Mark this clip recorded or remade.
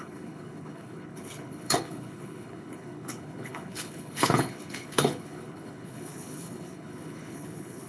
remade